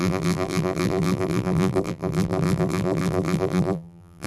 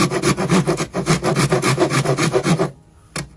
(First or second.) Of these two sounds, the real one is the second